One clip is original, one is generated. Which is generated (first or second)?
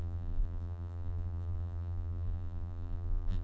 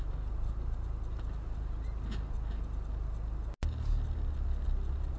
first